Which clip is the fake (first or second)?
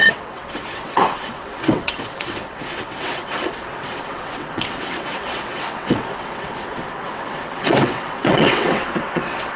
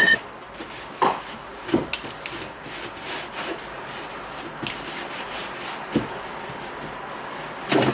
first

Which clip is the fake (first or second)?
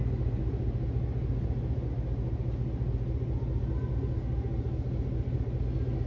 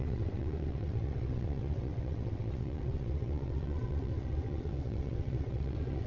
second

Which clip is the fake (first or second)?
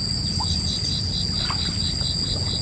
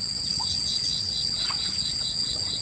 second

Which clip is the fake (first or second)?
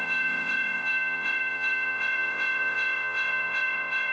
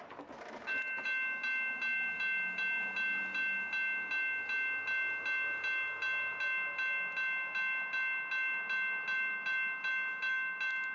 first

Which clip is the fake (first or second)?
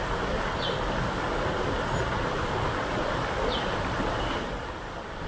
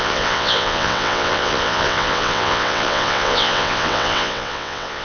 second